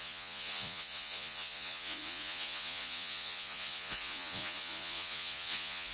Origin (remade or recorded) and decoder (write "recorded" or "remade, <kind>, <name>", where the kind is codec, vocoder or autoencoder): remade, vocoder, Vocos